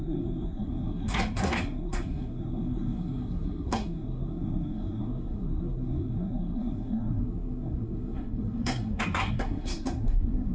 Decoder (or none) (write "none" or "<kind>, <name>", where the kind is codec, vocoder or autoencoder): codec, SNAC